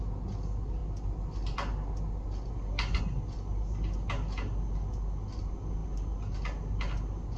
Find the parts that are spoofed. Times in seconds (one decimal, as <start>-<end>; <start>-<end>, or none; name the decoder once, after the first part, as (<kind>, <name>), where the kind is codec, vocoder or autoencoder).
none